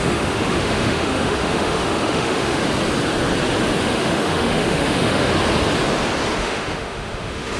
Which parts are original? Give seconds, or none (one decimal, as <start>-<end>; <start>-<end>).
2.6-3.8; 5.3-6.4